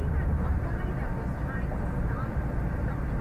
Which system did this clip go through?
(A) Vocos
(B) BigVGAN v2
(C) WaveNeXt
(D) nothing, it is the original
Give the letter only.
D